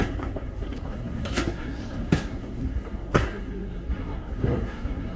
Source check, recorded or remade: remade